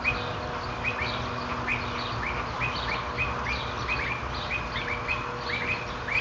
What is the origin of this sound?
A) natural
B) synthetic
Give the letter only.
A